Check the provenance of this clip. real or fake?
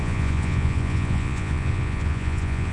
fake